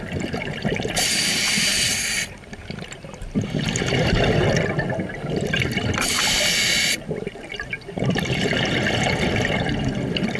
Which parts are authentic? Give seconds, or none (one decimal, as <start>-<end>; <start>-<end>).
0.0-10.4